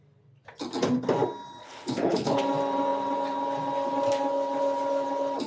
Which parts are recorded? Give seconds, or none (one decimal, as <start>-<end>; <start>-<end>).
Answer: 0.0-1.6; 2.4-5.5